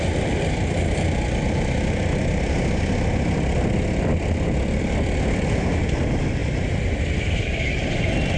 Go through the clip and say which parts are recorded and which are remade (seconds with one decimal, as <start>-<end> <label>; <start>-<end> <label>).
0.0-8.4 recorded